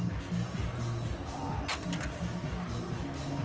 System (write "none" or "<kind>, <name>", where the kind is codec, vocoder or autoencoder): none